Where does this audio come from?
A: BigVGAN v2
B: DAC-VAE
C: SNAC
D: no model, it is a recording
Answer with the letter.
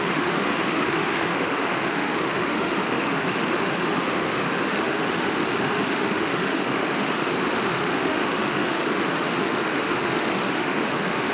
B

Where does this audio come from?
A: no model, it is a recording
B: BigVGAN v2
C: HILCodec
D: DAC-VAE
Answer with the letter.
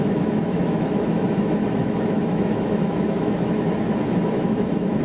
D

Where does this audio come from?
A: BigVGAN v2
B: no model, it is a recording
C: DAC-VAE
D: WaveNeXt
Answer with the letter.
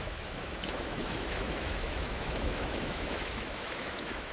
C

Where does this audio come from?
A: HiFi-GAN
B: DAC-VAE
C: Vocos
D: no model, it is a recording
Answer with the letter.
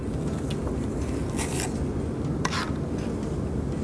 D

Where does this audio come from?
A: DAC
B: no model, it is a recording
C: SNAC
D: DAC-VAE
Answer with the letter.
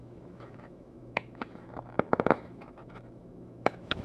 D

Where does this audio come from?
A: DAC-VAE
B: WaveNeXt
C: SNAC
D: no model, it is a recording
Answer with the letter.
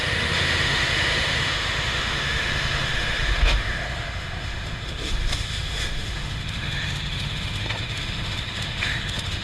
A